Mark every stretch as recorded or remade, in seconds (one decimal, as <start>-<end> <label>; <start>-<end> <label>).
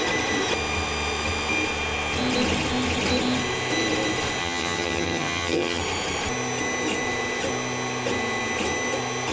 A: 0.0-4.4 recorded; 4.4-5.8 remade; 5.8-9.3 recorded